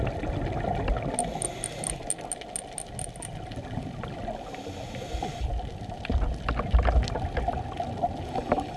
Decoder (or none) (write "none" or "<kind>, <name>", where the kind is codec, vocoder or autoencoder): none